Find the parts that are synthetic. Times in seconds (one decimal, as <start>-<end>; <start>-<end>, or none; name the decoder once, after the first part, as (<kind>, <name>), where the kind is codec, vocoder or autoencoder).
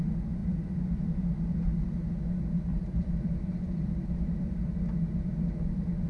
2.7-4.5 (vocoder, BigVGAN v2)